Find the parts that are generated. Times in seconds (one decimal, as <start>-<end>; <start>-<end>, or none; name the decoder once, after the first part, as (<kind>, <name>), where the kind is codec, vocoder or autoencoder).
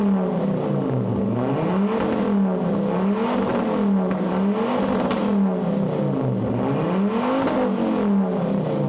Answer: none